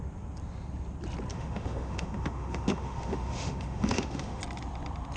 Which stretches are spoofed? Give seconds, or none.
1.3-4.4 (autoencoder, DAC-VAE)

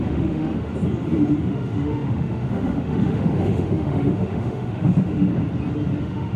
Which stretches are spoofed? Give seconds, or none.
0.0-0.7 (autoencoder, DAC-VAE); 1.4-5.3; 6.0-6.4

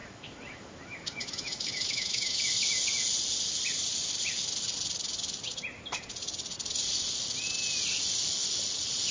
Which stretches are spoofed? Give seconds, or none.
0.0-2.4 (autoencoder, DAC-VAE)

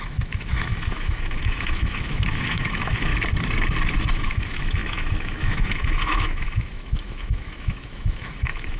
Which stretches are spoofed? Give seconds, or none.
0.0-3.1 (autoencoder, DAC-VAE); 4.1-8.8

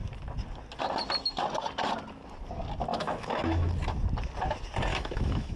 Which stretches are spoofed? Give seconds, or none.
2.9-3.7 (autoencoder, DAC-VAE); 4.9-5.6